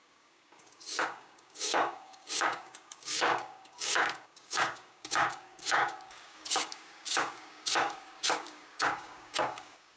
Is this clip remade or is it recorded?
remade